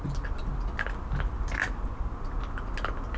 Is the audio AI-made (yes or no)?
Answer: no